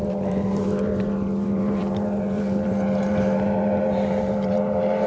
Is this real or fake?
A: fake